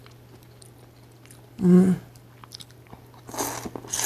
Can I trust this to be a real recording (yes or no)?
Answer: yes